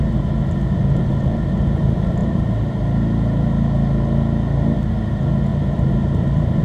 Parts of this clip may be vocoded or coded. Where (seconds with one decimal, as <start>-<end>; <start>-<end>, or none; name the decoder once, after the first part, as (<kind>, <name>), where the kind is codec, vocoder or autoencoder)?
2.2-2.8 (vocoder, BigVGAN v2); 5.5-6.6